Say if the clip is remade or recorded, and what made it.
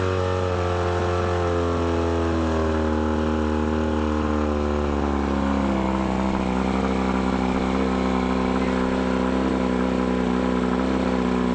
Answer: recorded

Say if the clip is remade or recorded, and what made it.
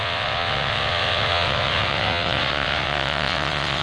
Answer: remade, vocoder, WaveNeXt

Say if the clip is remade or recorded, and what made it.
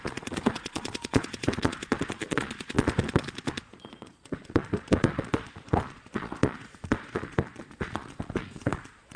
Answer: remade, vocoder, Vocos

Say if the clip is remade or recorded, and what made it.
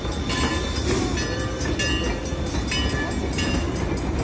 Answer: recorded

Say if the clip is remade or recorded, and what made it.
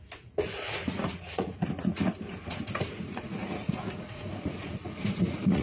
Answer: remade, vocoder, Vocos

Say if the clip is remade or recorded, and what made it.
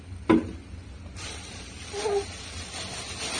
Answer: recorded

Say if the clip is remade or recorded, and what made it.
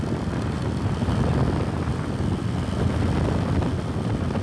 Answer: recorded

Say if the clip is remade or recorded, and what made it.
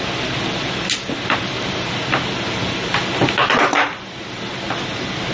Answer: recorded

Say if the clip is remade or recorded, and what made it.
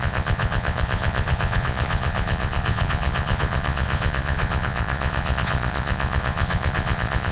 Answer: remade, vocoder, Vocos